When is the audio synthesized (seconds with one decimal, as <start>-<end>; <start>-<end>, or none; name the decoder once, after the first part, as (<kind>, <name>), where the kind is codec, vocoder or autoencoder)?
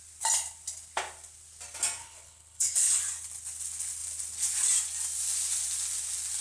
2.0-3.0 (codec, HILCodec)